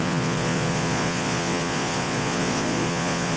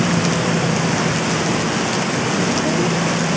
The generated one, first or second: first